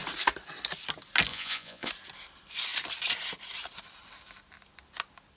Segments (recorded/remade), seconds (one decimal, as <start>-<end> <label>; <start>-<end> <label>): 0.0-1.3 recorded; 1.3-1.9 remade; 1.9-5.4 recorded